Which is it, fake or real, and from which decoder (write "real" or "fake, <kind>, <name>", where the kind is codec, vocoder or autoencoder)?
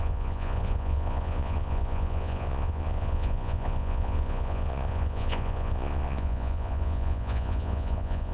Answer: fake, vocoder, Vocos